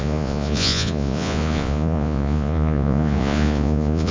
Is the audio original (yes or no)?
no